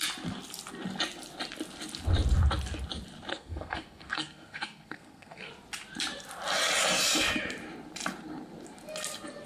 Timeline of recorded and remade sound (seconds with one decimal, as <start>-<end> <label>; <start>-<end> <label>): 0.0-3.3 recorded; 3.3-5.5 remade; 5.5-9.5 recorded